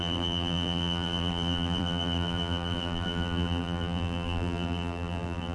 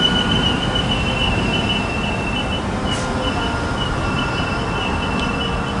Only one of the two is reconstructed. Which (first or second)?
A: first